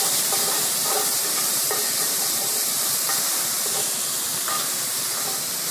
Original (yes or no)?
no